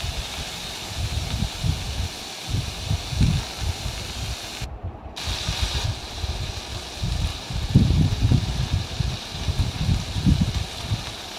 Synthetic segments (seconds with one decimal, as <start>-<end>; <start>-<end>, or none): 6.0-6.5; 7.3-8.5